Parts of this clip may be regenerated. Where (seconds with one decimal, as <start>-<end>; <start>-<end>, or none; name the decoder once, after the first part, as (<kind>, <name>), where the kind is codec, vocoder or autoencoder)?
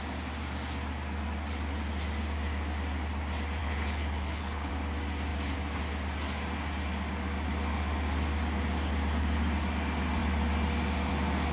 3.6-4.7 (codec, HILCodec)